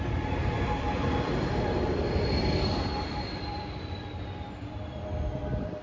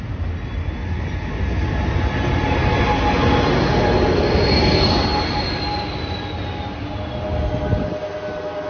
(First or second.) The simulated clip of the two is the first